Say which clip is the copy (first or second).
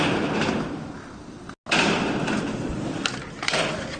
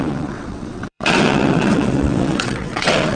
second